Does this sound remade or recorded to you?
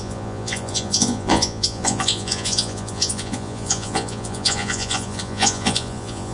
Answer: remade